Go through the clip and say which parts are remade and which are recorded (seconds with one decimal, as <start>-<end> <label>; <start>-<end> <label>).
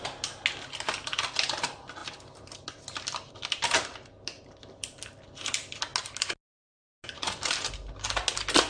0.0-8.7 recorded